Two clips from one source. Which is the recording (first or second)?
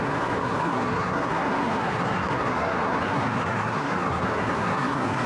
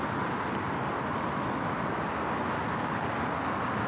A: second